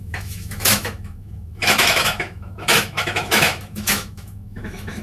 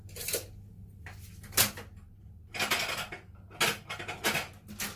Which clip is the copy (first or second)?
first